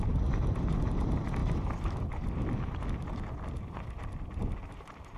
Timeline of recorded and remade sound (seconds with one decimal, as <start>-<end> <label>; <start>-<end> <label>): 0.0-5.2 recorded